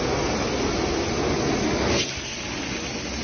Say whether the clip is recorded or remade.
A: recorded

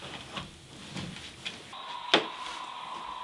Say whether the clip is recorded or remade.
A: recorded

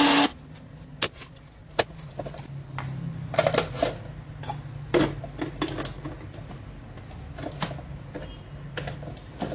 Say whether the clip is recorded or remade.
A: recorded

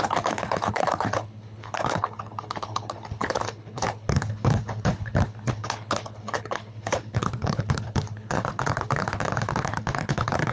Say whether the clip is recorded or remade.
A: remade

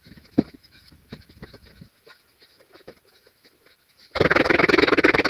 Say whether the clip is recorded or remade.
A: remade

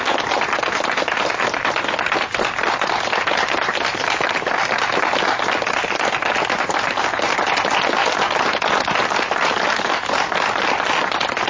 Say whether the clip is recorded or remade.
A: recorded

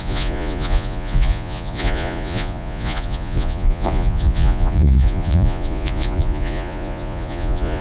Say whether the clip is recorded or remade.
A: remade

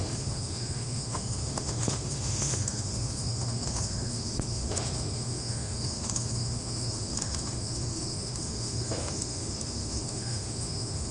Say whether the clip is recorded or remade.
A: remade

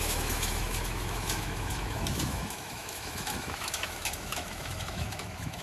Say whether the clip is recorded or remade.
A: remade